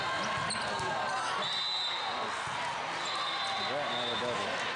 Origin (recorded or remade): recorded